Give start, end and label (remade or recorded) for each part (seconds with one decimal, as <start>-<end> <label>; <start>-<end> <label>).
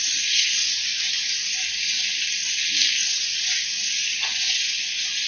0.0-0.9 remade; 0.9-3.0 recorded; 3.0-5.3 remade